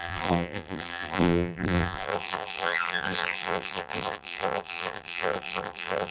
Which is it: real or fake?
fake